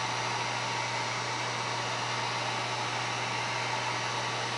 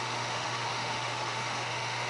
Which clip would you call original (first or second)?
first